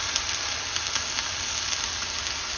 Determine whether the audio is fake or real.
real